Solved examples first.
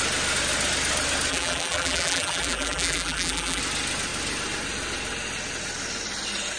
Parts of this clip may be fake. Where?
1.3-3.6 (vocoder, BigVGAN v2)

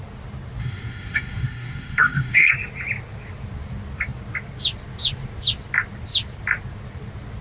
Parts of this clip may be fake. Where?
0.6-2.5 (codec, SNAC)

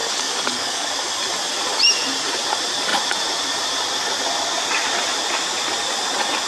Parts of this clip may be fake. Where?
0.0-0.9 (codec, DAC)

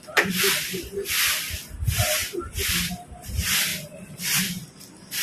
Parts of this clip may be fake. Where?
0.0-2.2 (vocoder, BigVGAN v2); 2.9-3.7; 4.4-5.2

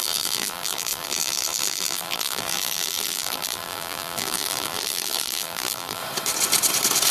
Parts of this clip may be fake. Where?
0.0-6.0 (vocoder, BigVGAN v2)